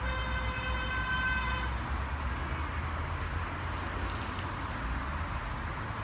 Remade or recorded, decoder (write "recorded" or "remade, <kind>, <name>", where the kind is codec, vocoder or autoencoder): recorded